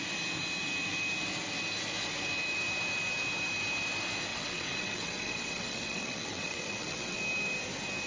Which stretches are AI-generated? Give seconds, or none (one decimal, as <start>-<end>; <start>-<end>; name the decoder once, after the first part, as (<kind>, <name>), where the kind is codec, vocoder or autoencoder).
4.3-7.2 (vocoder, WaveNeXt)